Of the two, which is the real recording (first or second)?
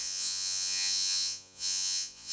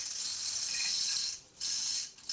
second